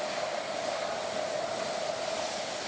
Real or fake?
real